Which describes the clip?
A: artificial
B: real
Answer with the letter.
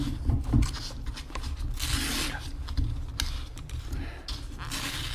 B